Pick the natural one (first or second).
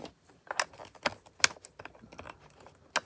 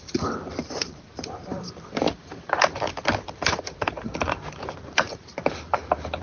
first